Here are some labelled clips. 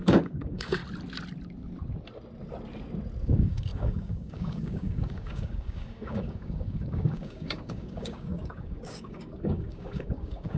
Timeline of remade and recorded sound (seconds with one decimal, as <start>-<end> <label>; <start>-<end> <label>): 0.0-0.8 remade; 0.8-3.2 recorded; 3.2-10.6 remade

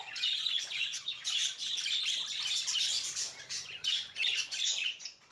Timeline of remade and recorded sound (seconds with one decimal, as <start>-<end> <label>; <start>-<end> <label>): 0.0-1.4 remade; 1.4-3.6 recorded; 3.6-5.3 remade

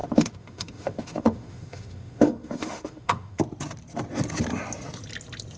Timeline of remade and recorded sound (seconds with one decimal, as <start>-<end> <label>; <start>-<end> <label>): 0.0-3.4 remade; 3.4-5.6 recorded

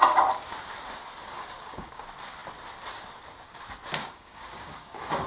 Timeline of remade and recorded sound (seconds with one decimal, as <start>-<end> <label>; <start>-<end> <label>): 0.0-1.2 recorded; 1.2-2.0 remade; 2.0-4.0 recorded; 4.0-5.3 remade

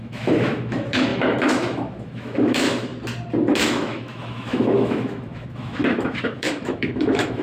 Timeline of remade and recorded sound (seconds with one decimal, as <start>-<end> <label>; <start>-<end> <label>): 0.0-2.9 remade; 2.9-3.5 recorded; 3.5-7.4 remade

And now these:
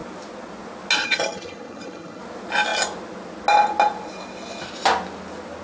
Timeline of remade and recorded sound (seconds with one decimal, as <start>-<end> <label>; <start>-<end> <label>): 0.0-1.0 recorded; 1.0-2.2 remade; 2.2-5.6 recorded

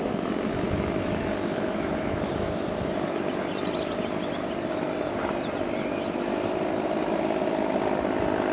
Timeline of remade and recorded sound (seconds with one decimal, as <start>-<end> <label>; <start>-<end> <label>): 0.0-0.5 recorded; 0.5-3.3 remade; 3.3-8.5 recorded

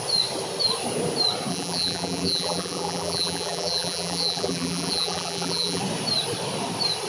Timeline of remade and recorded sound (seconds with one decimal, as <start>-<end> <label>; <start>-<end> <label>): 0.0-1.5 recorded; 1.5-5.8 remade; 5.8-7.1 recorded